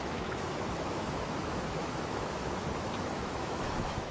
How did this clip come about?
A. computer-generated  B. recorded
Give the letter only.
A